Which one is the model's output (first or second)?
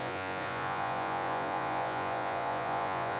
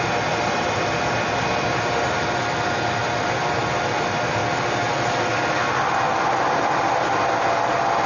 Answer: first